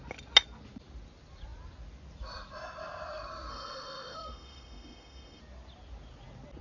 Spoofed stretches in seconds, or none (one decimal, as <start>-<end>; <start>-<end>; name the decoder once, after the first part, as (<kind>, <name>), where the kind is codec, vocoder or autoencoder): 3.5-5.4 (autoencoder, DAC-VAE)